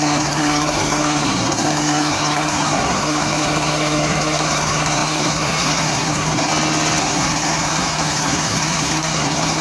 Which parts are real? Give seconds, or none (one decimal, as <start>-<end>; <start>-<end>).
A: 6.5-7.0